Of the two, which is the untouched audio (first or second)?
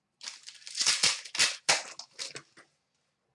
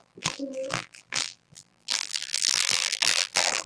first